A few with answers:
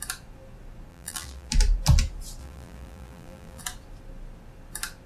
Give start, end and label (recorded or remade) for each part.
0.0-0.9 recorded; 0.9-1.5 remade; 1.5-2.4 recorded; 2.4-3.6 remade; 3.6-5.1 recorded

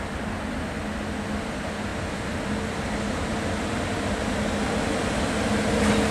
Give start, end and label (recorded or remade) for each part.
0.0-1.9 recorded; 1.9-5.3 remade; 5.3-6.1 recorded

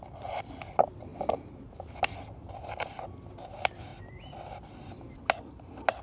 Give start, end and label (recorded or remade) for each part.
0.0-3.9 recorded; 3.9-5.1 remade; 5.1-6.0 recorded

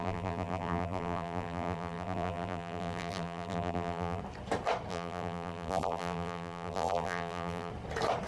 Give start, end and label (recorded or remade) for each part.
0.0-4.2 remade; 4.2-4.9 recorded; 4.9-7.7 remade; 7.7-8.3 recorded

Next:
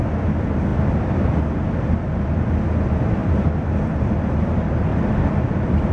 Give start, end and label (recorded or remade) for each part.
0.0-0.7 recorded; 0.7-1.4 remade; 1.4-3.2 recorded; 3.2-4.1 remade; 4.1-4.9 recorded; 4.9-5.9 remade

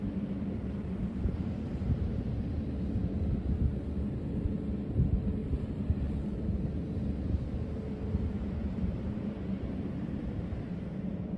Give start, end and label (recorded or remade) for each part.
0.0-1.1 recorded; 1.1-2.6 remade; 2.6-5.4 recorded; 5.4-10.3 remade; 10.3-11.4 recorded

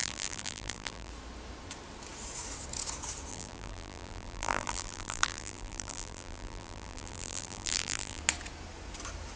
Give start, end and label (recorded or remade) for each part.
0.0-1.1 remade; 1.1-3.3 recorded; 3.3-8.2 remade; 8.2-9.4 recorded

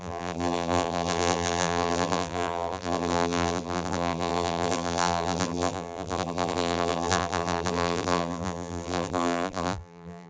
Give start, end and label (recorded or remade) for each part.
0.0-10.3 remade